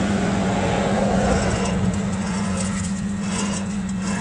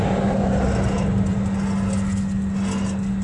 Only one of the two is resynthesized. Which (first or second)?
first